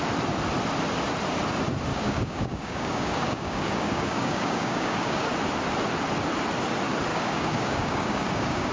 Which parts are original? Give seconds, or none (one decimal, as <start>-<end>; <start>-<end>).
0.0-1.9; 5.3-7.1